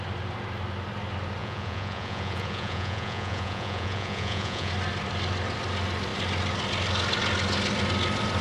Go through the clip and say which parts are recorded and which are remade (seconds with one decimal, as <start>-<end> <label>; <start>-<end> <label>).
0.0-1.4 recorded; 1.4-4.7 remade; 4.7-8.4 recorded